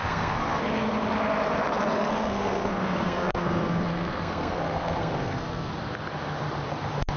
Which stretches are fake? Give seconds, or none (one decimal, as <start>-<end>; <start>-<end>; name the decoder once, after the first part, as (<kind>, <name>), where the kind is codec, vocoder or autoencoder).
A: 0.0-0.6 (codec, SNAC); 2.1-5.7